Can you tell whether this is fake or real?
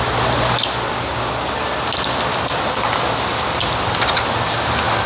real